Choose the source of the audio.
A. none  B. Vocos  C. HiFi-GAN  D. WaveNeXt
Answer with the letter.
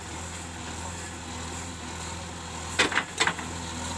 A